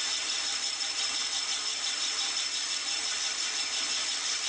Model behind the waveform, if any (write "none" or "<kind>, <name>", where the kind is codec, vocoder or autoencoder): none